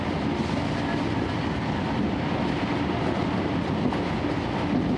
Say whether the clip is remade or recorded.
recorded